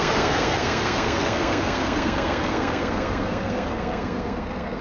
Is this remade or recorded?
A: remade